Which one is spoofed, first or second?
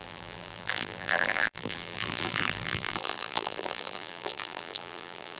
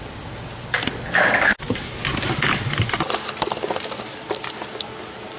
first